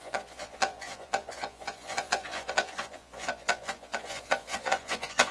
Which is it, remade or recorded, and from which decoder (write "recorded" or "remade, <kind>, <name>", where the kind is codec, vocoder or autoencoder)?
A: remade, vocoder, Vocos